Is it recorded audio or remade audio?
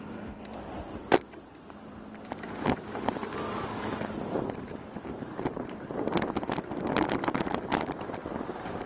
remade